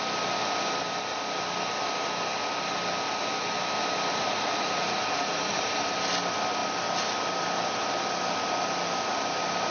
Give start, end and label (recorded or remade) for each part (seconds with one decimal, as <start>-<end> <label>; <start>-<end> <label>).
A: 0.0-4.1 recorded; 4.1-5.7 remade; 5.7-9.7 recorded